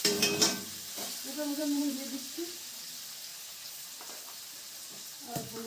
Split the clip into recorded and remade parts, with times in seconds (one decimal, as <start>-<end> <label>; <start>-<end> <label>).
0.0-3.3 remade; 3.3-4.6 recorded; 4.6-5.7 remade

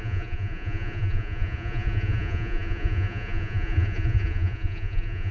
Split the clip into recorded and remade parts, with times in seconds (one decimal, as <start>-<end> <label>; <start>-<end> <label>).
0.0-5.3 remade

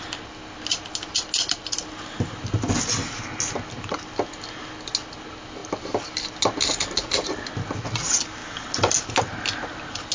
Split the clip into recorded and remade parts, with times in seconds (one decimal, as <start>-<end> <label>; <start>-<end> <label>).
0.0-10.1 recorded

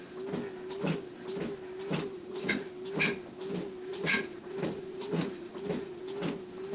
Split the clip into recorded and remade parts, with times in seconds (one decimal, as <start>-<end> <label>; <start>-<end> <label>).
0.0-2.1 recorded; 2.1-2.7 remade; 2.7-3.9 recorded; 3.9-6.0 remade; 6.0-6.7 recorded

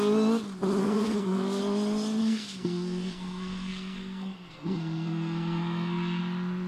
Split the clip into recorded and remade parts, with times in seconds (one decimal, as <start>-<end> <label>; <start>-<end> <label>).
0.0-0.8 recorded; 0.8-1.6 remade; 1.6-2.2 recorded; 2.2-6.2 remade; 6.2-6.7 recorded

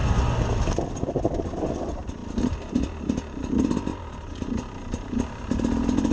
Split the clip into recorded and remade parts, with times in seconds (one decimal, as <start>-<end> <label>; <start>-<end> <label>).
0.0-3.9 recorded; 3.9-5.6 remade; 5.6-6.1 recorded

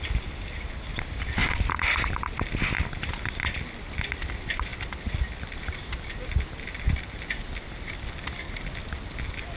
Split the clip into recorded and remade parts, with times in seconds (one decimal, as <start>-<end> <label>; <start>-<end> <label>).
0.0-1.4 recorded; 1.4-2.4 remade; 2.4-9.6 recorded